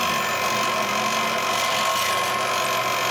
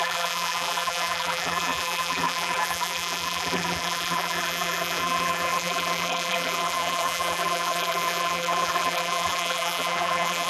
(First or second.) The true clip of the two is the first